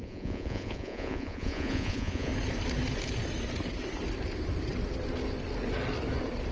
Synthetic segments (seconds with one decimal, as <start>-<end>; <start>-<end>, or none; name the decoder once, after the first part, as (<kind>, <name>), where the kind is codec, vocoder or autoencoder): 0.0-2.3 (vocoder, Vocos)